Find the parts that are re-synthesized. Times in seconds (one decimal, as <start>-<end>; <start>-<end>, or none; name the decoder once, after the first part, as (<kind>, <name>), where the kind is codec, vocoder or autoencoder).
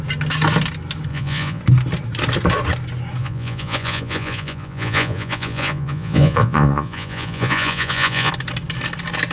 1.1-1.6 (vocoder, Vocos); 3.2-8.3